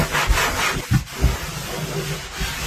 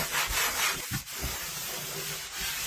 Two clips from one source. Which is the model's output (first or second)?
second